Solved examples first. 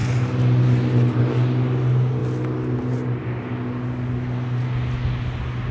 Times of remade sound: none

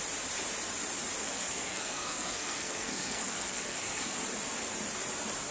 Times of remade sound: 1.2-4.2 (codec, SNAC)

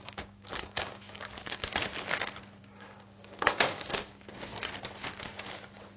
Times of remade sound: 0.0-1.7 (codec, DAC); 2.6-4.5

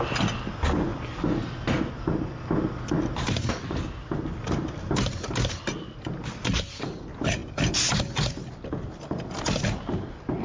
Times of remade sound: none

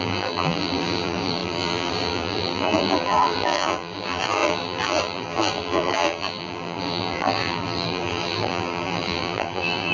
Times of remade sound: 0.0-9.9 (vocoder, BigVGAN v2)

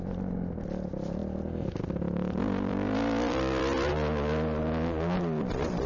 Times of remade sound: 1.2-3.9 (vocoder, BigVGAN v2)

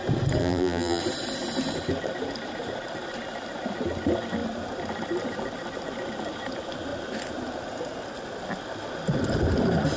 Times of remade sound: 0.4-1.0 (vocoder, BigVGAN v2)